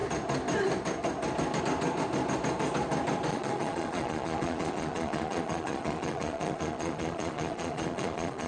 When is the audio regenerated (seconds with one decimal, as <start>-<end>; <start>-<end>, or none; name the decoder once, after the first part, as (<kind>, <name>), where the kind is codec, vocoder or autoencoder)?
3.3-8.5 (vocoder, Vocos)